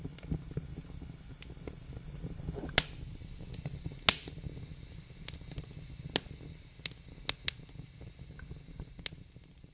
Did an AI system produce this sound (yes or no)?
no